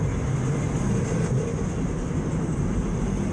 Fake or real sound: real